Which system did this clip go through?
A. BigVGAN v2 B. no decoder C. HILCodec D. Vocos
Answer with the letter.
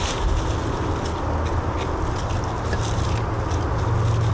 B